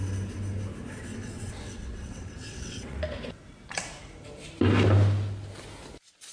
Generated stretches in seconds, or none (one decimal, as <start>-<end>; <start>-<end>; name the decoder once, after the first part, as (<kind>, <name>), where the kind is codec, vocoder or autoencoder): 1.1-3.0 (vocoder, WaveNeXt)